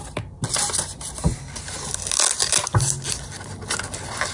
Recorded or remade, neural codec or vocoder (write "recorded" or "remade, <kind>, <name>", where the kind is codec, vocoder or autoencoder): recorded